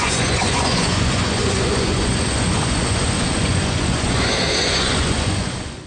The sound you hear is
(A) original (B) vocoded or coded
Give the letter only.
B